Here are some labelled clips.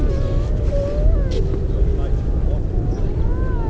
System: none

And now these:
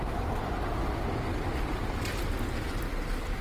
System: none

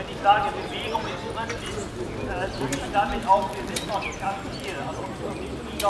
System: none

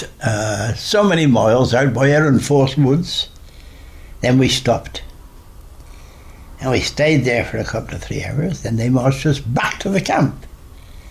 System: none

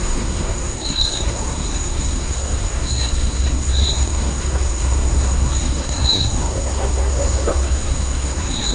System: codec, SNAC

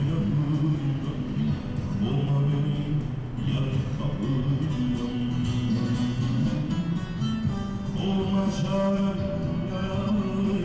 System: none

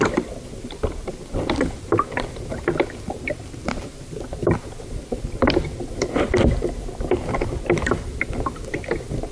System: none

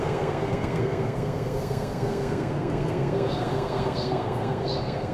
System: codec, SNAC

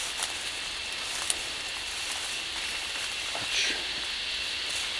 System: none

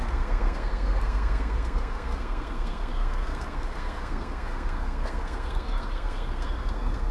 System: codec, SNAC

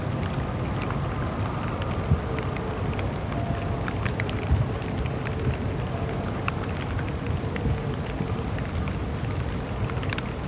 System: none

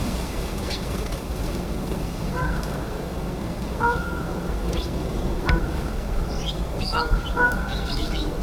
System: codec, SNAC